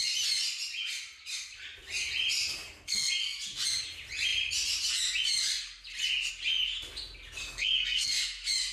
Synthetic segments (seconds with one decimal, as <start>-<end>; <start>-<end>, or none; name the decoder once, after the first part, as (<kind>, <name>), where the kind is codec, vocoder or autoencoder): 2.5-3.1 (codec, SNAC); 7.4-8.1